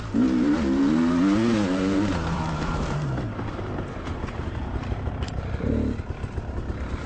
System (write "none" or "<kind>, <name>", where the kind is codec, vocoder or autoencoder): vocoder, BigVGAN v2